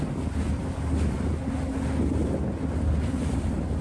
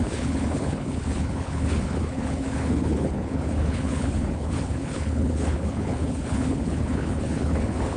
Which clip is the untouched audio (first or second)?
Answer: first